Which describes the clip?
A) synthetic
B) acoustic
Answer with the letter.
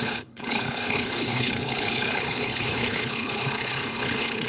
A